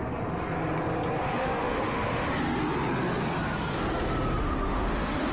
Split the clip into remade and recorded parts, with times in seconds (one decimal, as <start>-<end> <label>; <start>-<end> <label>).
0.0-1.3 recorded; 1.3-2.3 remade; 2.3-4.4 recorded; 4.4-5.3 remade